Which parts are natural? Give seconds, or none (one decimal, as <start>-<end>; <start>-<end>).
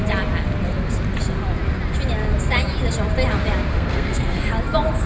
0.0-3.7; 4.4-5.1